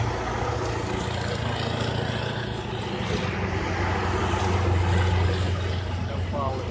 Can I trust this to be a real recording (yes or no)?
yes